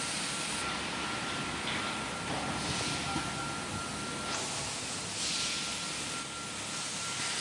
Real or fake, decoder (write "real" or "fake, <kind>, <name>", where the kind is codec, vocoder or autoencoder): real